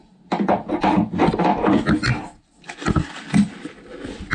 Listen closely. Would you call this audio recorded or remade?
recorded